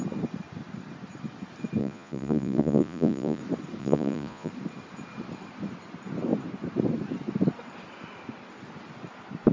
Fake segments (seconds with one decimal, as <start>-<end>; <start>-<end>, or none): 1.8-3.4; 3.8-4.5